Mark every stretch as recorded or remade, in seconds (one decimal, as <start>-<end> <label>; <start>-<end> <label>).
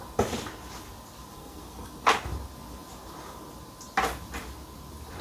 0.0-1.3 recorded; 1.3-1.9 remade; 1.9-5.2 recorded